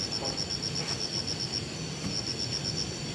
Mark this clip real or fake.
real